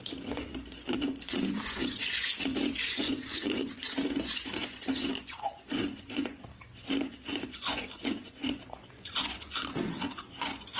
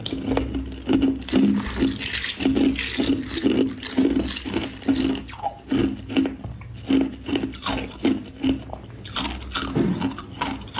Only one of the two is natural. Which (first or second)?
second